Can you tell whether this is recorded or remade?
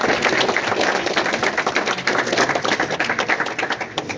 recorded